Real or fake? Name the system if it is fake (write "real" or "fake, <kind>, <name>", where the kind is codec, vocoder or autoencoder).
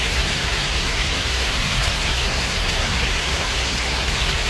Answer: fake, codec, SNAC